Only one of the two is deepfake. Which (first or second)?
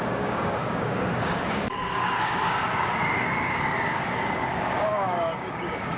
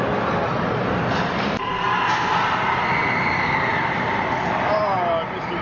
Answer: first